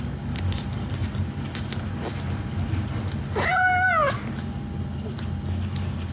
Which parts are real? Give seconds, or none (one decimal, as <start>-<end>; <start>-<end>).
0.0-6.1